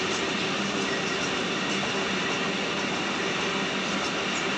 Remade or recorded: recorded